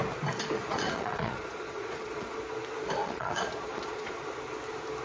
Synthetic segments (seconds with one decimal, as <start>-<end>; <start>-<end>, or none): 0.6-2.4; 3.0-4.2